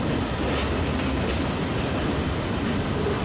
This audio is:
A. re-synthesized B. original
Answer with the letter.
B